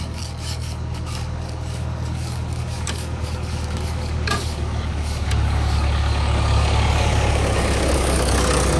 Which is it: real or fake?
fake